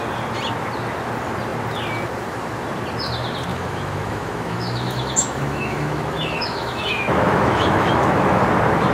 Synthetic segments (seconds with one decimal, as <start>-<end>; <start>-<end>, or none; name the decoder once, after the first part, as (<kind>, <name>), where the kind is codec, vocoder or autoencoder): 3.5-8.4 (autoencoder, DAC-VAE)